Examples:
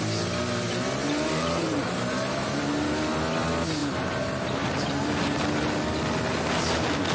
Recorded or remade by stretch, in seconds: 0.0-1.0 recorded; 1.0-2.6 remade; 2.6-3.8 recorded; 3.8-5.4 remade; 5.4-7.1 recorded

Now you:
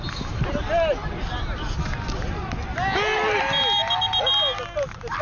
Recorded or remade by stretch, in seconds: 0.0-5.2 recorded

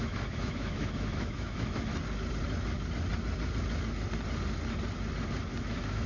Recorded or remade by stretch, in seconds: 0.0-1.9 remade; 1.9-5.6 recorded; 5.6-6.1 remade

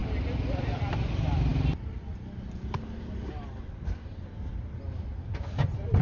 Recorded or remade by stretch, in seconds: 0.0-6.0 recorded